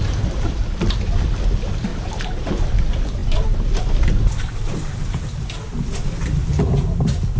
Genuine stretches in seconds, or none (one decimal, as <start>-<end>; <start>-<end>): 0.6-1.9; 2.4-3.2; 5.0-7.4